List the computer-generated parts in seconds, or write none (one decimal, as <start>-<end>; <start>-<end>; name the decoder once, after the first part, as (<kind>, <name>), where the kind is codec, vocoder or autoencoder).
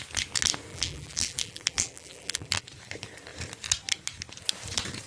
0.7-2.6 (vocoder, BigVGAN v2)